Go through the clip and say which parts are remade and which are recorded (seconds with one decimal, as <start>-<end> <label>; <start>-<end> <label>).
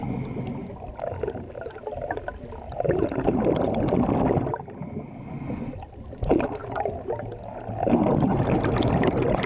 0.0-9.5 recorded